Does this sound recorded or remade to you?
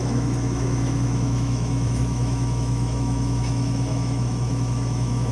remade